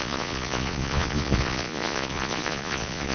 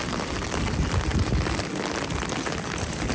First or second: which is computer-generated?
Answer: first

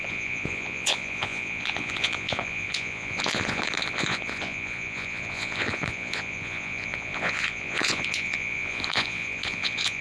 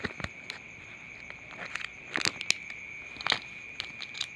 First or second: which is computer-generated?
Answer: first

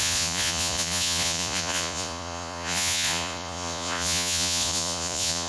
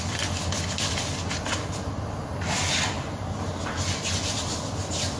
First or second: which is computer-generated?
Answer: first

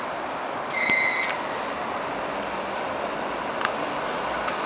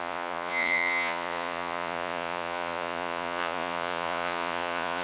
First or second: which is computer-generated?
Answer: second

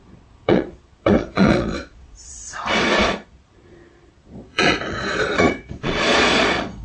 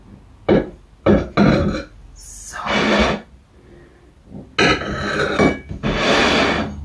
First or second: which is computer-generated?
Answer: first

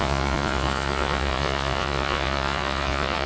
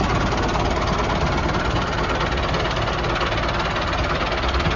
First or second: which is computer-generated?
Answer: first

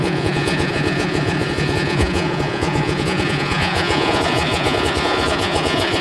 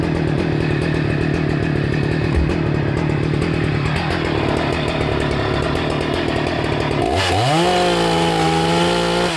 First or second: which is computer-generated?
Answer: first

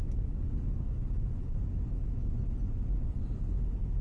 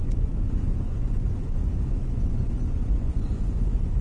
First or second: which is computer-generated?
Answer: second